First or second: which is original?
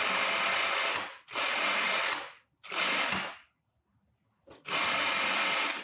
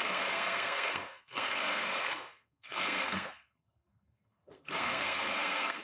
first